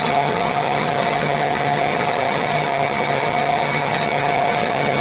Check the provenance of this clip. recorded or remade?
remade